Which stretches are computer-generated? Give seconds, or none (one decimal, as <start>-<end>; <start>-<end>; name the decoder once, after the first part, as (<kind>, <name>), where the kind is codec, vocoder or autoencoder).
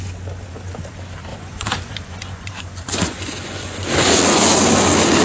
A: 1.3-4.4 (vocoder, Vocos)